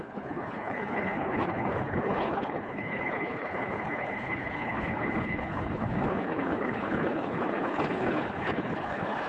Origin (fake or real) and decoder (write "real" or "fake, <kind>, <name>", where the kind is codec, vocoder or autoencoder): fake, codec, HILCodec